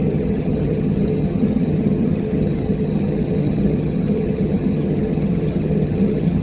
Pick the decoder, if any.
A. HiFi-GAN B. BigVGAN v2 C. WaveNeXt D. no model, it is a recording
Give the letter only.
A